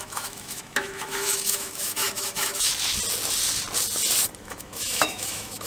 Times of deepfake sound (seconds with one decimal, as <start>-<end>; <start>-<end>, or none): 0.0-2.7; 4.4-5.7